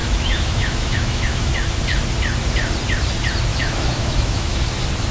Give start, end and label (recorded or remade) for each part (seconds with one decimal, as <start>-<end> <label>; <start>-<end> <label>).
0.0-1.5 remade; 1.5-3.5 recorded; 3.5-4.6 remade; 4.6-5.1 recorded